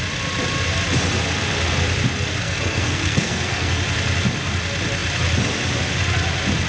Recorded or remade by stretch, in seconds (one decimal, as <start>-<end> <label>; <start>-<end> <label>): 0.0-2.4 recorded; 2.4-3.8 remade; 3.8-6.7 recorded